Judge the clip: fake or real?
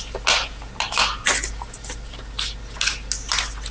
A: real